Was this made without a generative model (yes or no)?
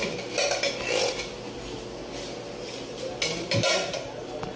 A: yes